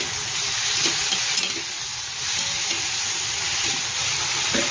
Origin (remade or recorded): recorded